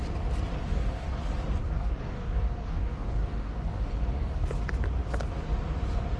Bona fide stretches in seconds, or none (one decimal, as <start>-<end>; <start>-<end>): 0.0-0.6; 1.2-1.6; 4.5-6.2